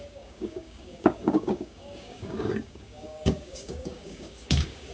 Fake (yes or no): yes